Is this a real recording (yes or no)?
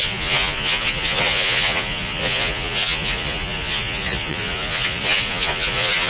no